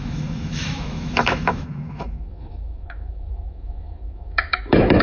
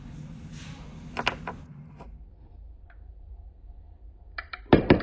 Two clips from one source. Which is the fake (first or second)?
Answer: first